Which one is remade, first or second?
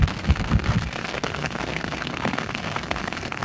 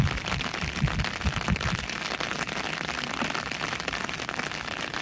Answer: first